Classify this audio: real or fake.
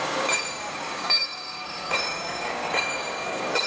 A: fake